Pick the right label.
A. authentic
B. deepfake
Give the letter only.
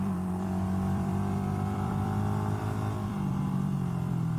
B